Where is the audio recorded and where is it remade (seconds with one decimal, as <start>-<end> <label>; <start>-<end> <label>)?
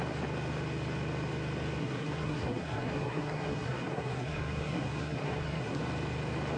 0.0-1.8 recorded; 1.8-5.8 remade; 5.8-6.6 recorded